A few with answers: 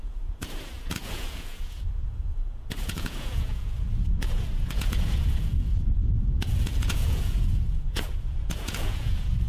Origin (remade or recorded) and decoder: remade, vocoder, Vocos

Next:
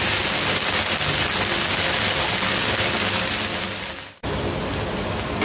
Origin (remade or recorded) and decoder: recorded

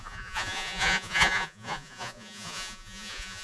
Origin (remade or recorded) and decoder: remade, vocoder, Vocos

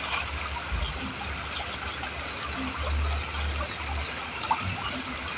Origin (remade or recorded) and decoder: recorded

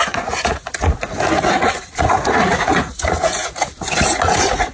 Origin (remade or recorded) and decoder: remade, vocoder, Vocos